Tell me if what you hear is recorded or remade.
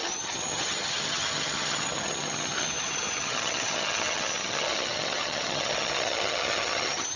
remade